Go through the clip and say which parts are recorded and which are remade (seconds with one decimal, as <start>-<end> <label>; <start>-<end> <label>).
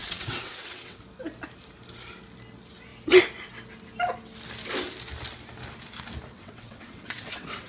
0.0-1.0 remade; 1.0-6.4 recorded; 6.4-7.7 remade